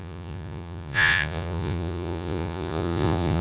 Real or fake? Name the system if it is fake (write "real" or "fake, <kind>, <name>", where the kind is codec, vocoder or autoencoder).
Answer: fake, vocoder, Vocos